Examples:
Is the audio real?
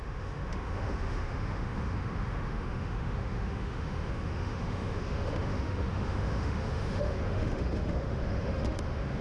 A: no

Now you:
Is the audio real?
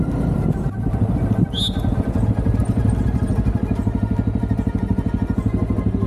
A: yes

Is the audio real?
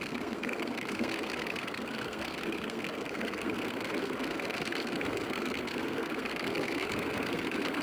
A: no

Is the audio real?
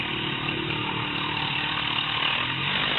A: yes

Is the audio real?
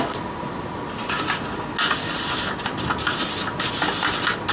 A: yes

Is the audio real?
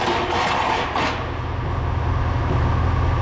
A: yes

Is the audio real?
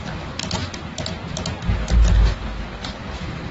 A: yes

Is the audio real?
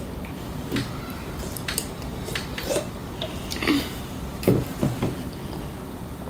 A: no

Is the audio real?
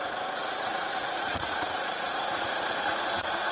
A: no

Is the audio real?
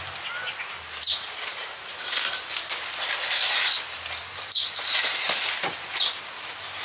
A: yes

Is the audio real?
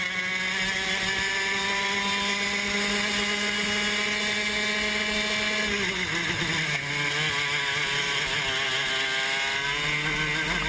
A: yes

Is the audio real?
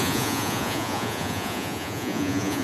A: no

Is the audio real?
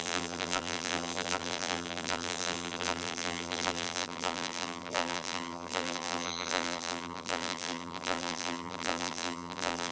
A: no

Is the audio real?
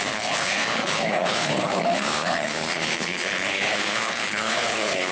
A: no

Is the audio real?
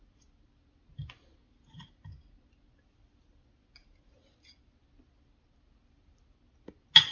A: yes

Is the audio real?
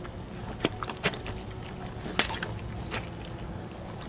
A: yes